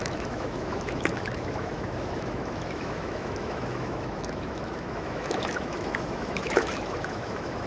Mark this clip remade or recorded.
remade